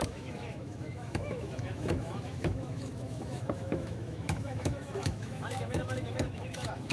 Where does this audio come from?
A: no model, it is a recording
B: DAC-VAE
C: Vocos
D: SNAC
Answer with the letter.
B